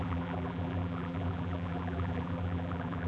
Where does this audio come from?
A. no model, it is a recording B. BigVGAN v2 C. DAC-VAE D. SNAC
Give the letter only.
B